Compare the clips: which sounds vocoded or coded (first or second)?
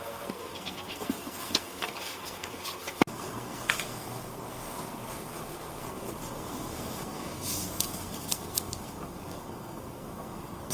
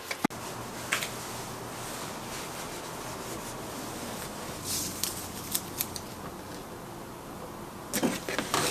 first